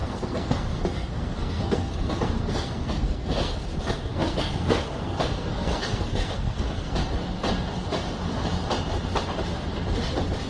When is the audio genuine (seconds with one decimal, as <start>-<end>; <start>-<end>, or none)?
7.0-10.5